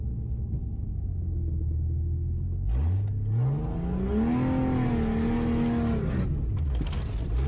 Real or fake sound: real